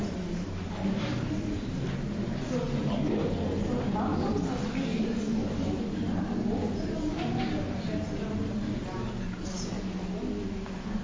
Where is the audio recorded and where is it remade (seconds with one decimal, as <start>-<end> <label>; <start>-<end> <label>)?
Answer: 0.0-4.9 recorded; 4.9-6.3 remade; 6.3-11.0 recorded